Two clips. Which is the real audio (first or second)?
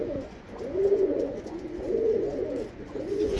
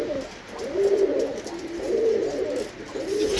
second